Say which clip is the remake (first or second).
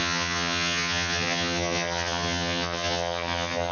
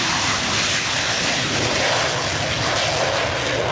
first